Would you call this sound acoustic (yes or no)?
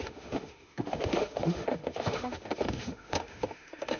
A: no